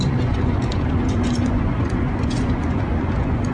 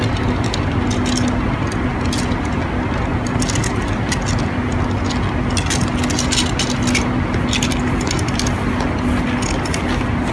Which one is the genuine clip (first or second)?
second